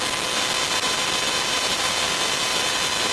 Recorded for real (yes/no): yes